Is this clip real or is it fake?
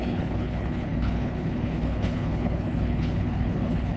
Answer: fake